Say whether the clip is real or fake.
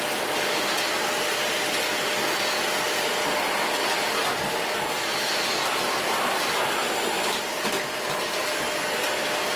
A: real